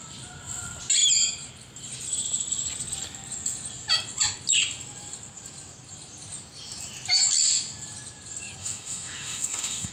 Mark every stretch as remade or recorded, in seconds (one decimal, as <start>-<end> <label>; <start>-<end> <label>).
0.0-8.6 recorded; 8.6-9.9 remade